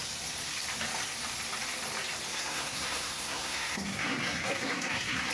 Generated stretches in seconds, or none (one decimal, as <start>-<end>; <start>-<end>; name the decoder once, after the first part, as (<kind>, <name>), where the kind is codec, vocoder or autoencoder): 2.3-5.3 (codec, SNAC)